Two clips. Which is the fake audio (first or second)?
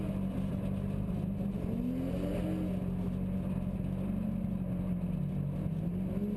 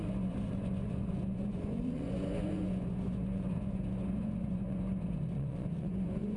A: second